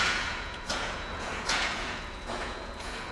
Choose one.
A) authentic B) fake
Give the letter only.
B